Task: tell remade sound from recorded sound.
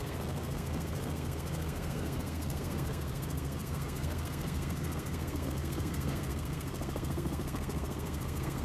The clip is remade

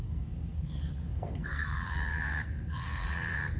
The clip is remade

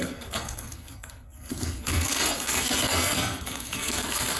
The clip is remade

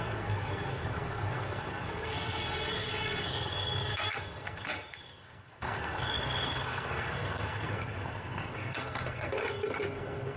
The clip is remade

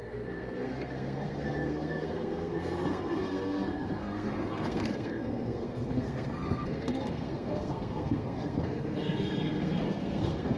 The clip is remade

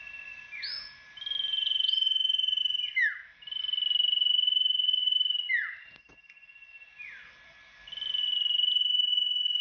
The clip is recorded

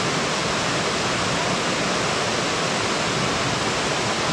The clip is recorded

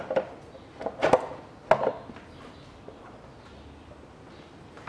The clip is recorded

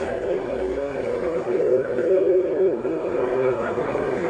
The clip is remade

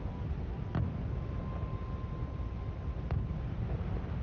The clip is recorded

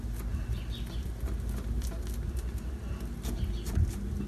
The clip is recorded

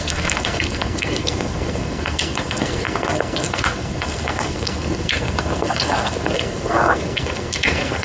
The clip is remade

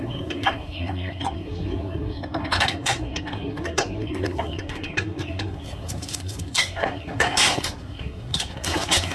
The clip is remade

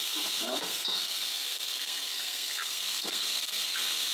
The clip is remade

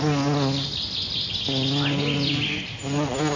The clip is recorded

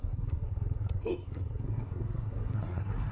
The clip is remade